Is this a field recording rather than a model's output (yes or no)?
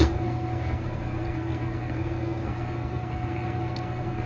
no